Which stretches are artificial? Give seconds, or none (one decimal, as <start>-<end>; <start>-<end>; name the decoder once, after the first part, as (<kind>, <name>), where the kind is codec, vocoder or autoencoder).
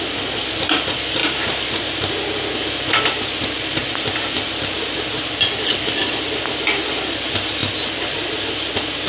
none